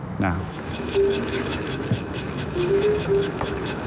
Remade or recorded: remade